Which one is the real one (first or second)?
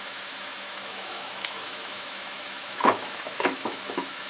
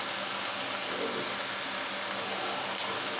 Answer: second